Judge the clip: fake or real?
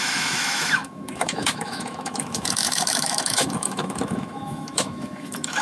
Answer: fake